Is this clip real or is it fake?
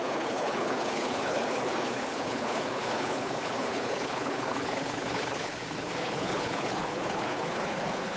fake